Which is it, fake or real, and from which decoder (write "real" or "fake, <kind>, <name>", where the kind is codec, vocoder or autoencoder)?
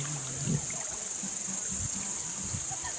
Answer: real